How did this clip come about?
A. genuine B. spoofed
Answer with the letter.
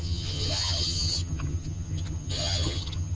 B